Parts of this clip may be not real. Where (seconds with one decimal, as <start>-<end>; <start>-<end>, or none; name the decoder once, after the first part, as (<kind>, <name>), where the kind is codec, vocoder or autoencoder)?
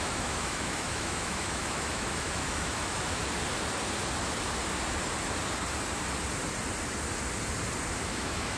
0.0-3.2 (autoencoder, DAC-VAE); 8.0-8.6